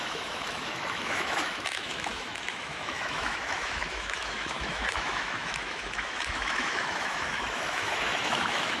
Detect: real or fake fake